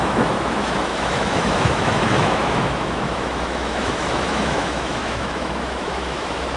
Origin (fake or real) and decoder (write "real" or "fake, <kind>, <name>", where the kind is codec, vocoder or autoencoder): fake, autoencoder, DAC-VAE